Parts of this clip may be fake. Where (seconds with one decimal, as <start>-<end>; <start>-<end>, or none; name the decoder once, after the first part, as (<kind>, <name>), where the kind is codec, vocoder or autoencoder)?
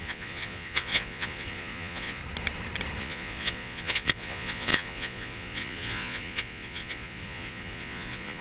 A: 0.0-2.2 (vocoder, Vocos); 3.0-8.4